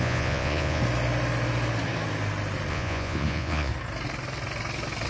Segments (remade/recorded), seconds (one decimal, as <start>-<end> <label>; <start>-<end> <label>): 0.0-0.8 remade; 0.8-2.7 recorded; 2.7-3.7 remade; 3.7-5.1 recorded